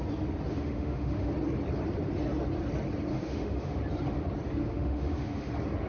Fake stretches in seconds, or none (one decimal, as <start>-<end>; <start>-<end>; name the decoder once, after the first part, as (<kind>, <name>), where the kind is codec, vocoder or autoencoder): 0.5-1.3 (autoencoder, DAC-VAE); 3.1-3.8; 4.6-5.5